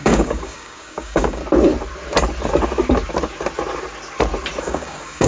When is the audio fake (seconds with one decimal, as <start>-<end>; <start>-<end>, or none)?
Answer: 0.0-1.4; 4.6-5.3